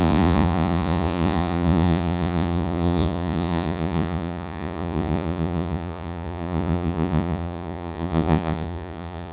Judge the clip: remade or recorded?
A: remade